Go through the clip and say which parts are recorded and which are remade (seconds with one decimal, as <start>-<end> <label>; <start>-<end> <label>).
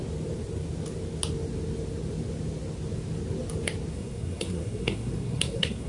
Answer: 0.0-3.9 recorded; 3.9-5.9 remade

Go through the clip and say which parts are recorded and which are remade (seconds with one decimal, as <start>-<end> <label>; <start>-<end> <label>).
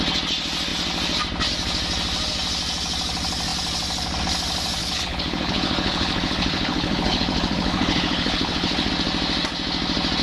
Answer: 0.0-4.8 recorded; 4.8-8.9 remade; 8.9-10.2 recorded